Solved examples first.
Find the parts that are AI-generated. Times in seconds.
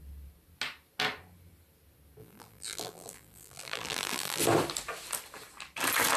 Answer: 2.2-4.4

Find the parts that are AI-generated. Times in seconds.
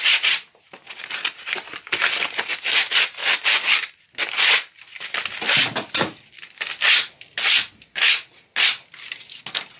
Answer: none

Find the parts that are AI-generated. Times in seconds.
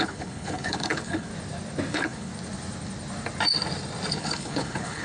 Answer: 0.0-1.3; 1.9-2.3; 4.1-5.0